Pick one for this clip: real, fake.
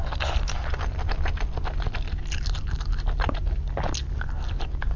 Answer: real